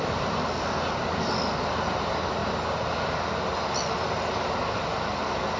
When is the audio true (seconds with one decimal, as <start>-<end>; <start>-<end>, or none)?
0.0-5.6